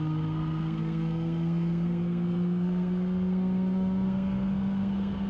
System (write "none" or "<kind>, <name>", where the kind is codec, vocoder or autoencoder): codec, SNAC